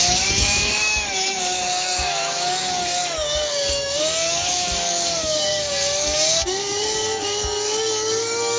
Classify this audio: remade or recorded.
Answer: remade